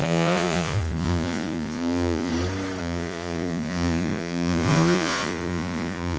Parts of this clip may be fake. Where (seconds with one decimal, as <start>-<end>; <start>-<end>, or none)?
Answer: 0.0-2.3; 2.8-6.2